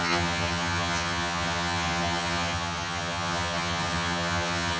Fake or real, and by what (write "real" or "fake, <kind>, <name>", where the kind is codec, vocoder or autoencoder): fake, vocoder, HiFi-GAN